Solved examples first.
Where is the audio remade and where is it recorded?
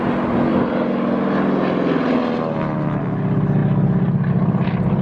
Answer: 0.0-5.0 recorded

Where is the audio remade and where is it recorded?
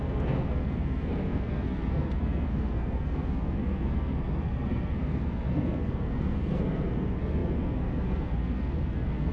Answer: 0.0-9.3 remade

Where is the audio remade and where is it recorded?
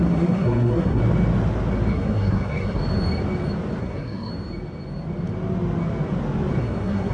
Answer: 0.0-1.0 remade; 1.0-1.9 recorded; 1.9-2.8 remade; 2.8-3.8 recorded; 3.8-4.3 remade; 4.3-6.6 recorded; 6.6-7.1 remade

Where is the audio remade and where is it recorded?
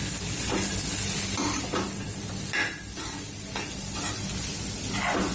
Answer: 0.0-5.3 recorded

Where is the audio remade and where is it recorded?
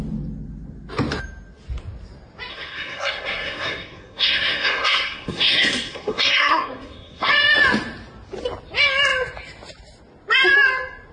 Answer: 0.0-2.5 recorded; 2.5-7.3 remade; 7.3-11.1 recorded